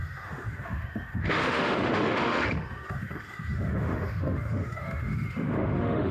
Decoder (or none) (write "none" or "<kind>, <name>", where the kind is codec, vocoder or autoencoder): autoencoder, DAC-VAE